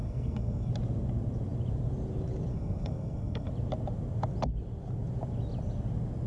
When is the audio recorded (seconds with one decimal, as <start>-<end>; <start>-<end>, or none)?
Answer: 0.7-2.5; 3.5-6.3